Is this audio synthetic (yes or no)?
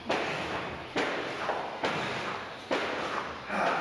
no